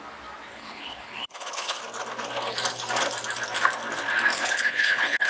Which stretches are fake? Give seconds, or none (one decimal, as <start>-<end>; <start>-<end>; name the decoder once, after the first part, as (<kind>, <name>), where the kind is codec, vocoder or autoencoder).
0.5-1.8 (codec, HILCodec); 4.3-5.3